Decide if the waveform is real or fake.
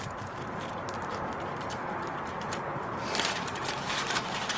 fake